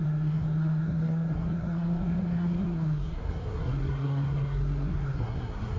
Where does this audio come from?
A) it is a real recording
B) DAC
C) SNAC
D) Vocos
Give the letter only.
C